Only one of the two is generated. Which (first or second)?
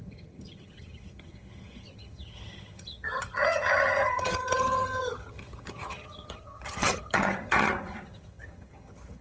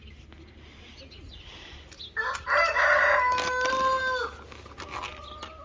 first